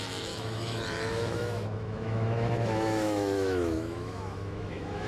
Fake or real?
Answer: fake